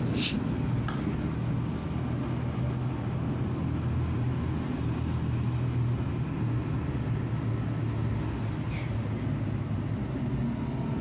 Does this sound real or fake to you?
real